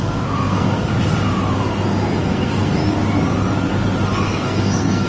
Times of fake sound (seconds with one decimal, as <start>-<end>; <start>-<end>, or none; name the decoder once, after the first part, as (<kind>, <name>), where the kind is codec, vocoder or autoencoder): 0.0-0.9 (codec, SNAC); 2.2-2.8; 4.2-5.1

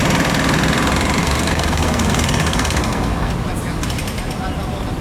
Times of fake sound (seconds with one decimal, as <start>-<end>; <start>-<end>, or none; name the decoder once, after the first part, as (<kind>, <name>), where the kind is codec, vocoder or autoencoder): 1.2-3.3 (codec, SNAC)